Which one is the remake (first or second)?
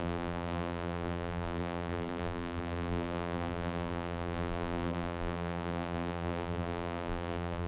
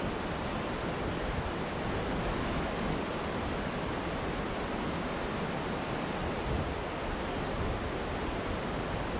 first